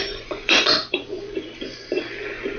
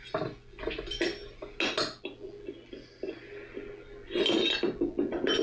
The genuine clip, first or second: second